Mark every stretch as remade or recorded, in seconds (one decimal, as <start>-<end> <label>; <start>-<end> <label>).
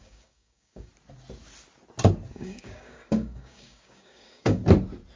0.0-0.9 remade; 0.9-2.3 recorded; 2.3-4.6 remade; 4.6-5.2 recorded